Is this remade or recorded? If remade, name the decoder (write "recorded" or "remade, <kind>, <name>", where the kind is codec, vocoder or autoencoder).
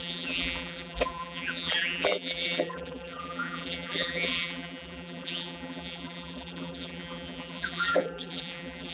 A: remade, vocoder, BigVGAN v2